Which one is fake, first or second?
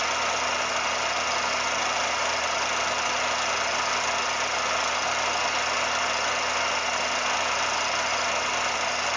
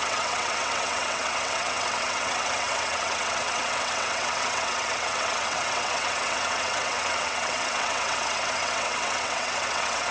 second